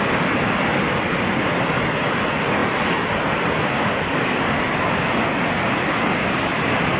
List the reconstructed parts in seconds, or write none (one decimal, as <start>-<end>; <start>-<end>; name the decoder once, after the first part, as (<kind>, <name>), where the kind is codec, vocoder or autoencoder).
none